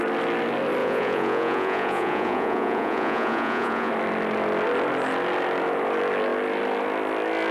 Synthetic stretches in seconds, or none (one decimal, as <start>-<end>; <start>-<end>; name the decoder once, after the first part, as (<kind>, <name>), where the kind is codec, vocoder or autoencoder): 0.8-3.9 (vocoder, Vocos)